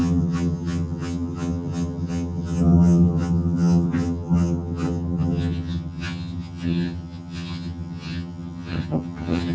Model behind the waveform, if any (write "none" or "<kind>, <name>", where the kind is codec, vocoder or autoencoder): vocoder, HiFi-GAN